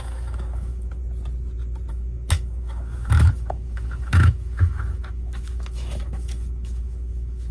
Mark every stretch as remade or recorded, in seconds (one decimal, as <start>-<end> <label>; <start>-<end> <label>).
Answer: 0.0-1.0 remade; 1.0-1.9 recorded; 1.9-7.5 remade